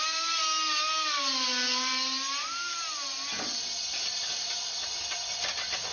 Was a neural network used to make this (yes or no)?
no